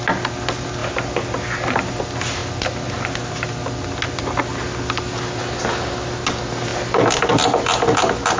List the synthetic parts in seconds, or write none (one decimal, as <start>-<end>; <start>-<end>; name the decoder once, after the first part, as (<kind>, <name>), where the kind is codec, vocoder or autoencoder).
none